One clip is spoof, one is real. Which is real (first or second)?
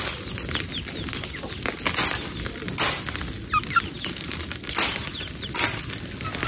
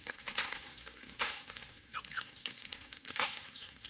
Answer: first